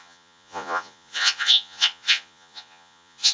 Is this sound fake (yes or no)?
yes